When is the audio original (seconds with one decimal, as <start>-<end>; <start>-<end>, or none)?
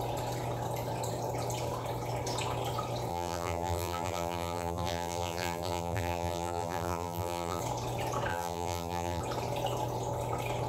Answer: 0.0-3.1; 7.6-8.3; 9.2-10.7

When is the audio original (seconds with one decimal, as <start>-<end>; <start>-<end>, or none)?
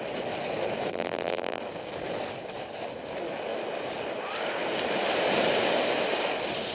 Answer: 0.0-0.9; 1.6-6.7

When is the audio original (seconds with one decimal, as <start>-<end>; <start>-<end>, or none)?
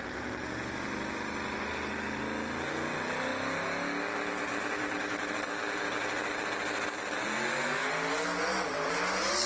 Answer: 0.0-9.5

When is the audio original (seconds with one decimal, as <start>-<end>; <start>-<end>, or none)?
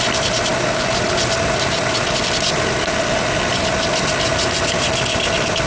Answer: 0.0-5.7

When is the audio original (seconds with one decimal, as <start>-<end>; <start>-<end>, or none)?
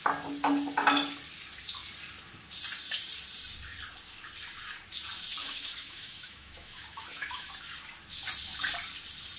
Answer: 0.0-5.4; 7.5-9.4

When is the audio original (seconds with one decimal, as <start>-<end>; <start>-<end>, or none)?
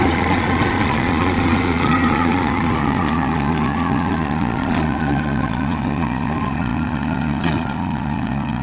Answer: none